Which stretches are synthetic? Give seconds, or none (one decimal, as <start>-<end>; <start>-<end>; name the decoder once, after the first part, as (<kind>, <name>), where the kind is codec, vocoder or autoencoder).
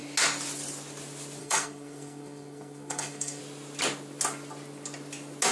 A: 1.4-3.4 (codec, SNAC)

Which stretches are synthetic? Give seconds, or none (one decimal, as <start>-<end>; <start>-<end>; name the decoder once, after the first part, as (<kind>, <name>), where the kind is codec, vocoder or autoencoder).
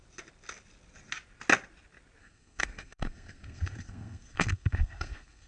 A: 2.2-5.5 (codec, SNAC)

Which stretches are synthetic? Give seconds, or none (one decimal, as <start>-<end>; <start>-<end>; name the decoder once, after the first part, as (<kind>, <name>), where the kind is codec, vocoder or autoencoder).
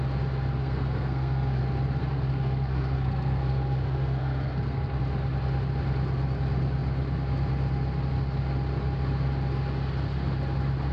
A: 0.6-1.6 (codec, SNAC); 2.0-5.0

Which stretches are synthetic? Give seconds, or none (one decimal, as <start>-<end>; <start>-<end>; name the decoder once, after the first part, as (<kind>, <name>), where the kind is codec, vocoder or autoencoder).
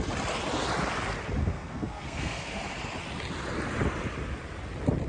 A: 1.4-2.6 (codec, SNAC)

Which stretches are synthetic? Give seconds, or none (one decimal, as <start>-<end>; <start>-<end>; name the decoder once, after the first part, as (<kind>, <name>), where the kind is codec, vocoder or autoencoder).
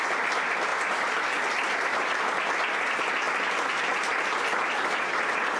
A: none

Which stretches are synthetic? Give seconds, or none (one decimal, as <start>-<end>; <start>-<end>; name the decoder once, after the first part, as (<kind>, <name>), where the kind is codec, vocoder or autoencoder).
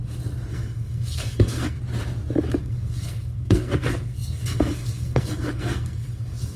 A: 0.5-1.8 (codec, SNAC); 2.6-6.6